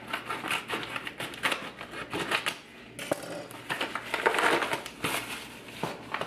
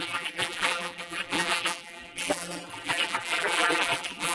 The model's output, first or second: second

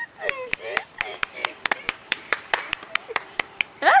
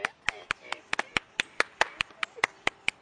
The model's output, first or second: first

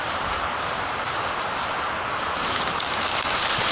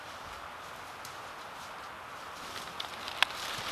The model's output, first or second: first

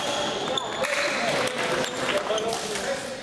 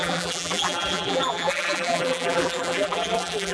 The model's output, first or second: second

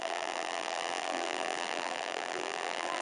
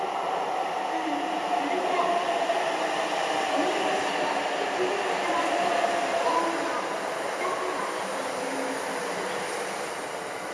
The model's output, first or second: first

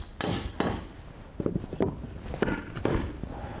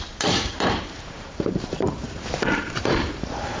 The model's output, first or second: second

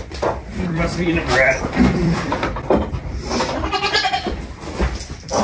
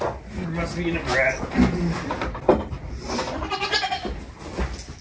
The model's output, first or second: first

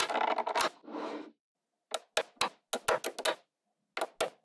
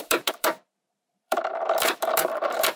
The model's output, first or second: second